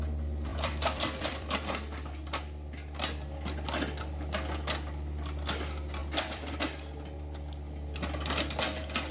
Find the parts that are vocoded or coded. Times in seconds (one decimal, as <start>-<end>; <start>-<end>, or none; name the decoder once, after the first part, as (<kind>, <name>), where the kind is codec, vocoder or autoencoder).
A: 0.5-1.7 (vocoder, BigVGAN v2); 6.0-6.5